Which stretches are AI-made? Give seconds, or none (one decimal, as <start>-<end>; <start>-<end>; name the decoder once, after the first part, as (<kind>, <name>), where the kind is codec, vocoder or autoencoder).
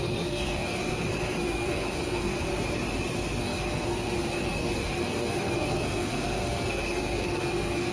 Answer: 0.0-2.5 (codec, SNAC); 3.4-7.9